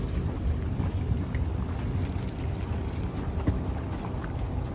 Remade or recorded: recorded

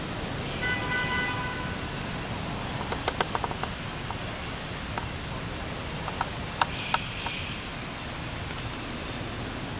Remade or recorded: recorded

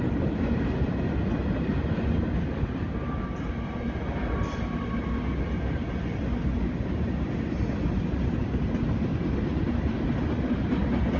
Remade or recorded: recorded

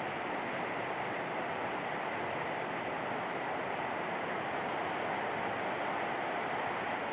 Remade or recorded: recorded